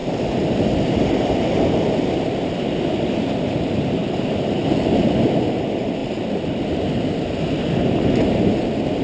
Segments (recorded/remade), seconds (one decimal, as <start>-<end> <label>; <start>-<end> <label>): 0.0-9.0 recorded